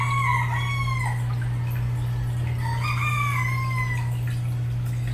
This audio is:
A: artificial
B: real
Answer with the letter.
B